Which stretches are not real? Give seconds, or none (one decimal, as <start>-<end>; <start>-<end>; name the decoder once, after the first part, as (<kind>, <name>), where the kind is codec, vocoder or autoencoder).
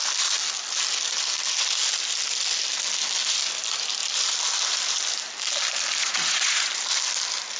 6.0-6.7 (vocoder, Vocos)